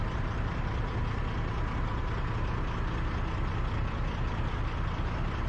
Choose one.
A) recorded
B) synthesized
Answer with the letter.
A